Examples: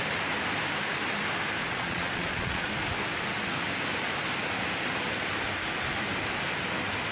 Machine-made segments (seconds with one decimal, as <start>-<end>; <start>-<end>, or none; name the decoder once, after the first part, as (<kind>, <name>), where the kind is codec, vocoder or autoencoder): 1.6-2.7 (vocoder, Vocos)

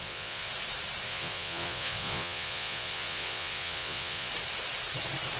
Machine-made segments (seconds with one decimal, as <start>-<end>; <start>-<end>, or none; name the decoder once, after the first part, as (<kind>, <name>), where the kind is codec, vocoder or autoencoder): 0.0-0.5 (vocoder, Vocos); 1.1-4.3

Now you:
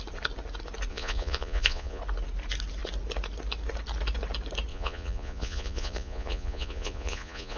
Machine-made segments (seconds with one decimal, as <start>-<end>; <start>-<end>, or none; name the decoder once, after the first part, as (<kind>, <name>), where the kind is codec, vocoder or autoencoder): 0.9-2.0 (vocoder, Vocos); 4.7-7.6